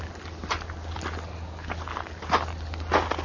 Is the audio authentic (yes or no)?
yes